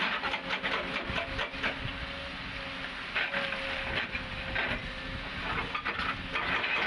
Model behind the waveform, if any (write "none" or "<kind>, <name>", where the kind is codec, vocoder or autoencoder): none